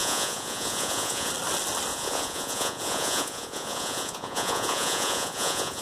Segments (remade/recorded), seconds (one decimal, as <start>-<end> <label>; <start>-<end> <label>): 0.0-1.3 remade; 1.3-1.9 recorded; 1.9-5.8 remade